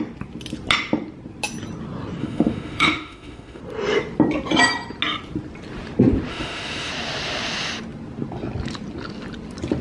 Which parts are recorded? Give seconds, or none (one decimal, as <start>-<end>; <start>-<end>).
0.0-2.2; 3.6-6.3; 6.9-9.8

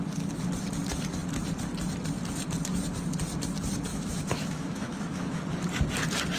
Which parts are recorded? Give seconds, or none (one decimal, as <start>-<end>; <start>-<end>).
0.0-3.9; 5.4-6.4

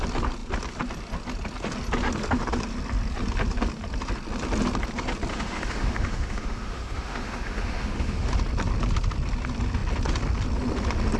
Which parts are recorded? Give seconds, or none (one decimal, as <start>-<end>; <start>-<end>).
0.0-5.3; 8.3-11.2

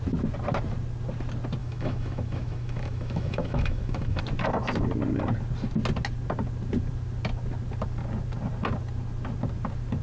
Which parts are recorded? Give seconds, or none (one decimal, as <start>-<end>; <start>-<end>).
0.0-1.6; 4.2-10.0

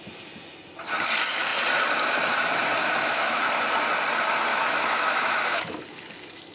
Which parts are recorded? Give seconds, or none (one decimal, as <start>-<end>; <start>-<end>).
0.0-2.8; 3.4-4.5; 5.8-6.5

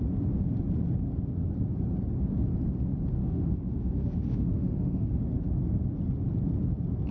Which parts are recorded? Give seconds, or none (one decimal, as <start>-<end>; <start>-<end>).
0.0-3.2; 5.2-7.1

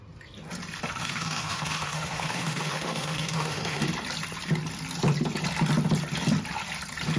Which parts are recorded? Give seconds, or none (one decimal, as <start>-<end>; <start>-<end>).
0.0-1.0; 3.8-7.2

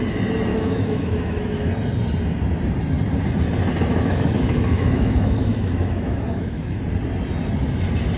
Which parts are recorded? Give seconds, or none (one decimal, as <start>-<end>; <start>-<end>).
0.0-0.5; 1.7-3.9; 6.8-8.2